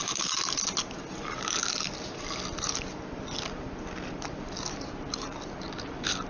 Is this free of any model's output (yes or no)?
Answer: yes